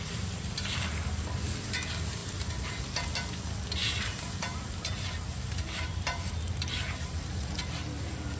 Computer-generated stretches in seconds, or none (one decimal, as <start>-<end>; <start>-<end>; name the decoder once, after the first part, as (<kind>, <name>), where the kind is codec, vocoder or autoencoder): 2.2-2.7 (vocoder, BigVGAN v2); 3.8-7.8